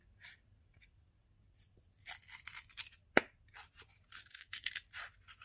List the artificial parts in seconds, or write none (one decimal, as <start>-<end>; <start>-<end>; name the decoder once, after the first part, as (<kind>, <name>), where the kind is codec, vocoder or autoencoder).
4.2-4.7 (codec, DAC)

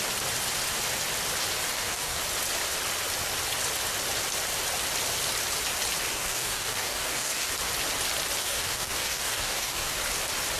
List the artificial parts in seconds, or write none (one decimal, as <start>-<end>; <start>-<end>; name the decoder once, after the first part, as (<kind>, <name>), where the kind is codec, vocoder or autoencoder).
1.7-2.2 (codec, DAC); 6.1-7.5; 8.4-9.9

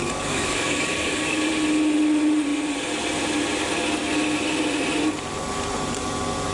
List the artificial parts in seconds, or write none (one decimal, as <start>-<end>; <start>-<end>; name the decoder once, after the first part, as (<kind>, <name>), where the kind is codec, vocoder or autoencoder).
0.0-1.5 (codec, DAC)

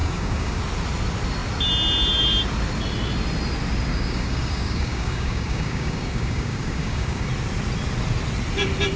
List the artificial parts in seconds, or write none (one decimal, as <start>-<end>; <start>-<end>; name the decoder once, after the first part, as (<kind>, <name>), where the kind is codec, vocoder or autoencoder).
0.0-0.6 (codec, DAC); 3.9-7.3

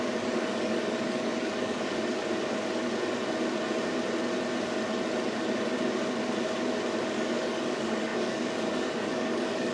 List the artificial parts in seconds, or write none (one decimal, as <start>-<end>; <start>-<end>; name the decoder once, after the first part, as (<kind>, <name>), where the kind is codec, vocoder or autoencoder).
0.0-2.2 (codec, DAC); 7.0-9.7